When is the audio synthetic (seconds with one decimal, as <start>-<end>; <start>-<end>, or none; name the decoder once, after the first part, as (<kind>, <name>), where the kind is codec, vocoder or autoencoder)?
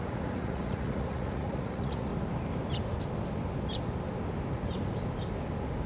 0.0-2.1 (vocoder, Vocos)